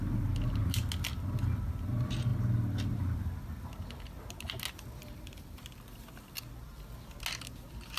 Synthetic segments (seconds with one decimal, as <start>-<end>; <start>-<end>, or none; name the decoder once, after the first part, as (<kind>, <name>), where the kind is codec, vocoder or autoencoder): 5.0-5.6 (vocoder, BigVGAN v2)